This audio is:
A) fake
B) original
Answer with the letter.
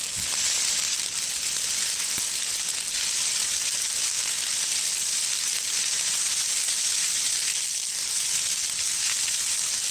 B